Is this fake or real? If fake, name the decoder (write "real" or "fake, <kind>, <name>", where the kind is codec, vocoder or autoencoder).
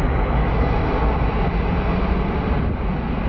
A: real